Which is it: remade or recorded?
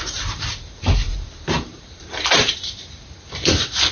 remade